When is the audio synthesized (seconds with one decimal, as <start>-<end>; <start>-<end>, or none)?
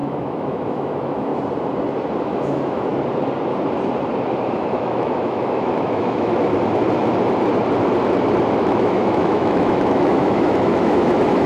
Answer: 0.0-1.3; 2.2-2.9; 4.5-6.5; 8.6-11.5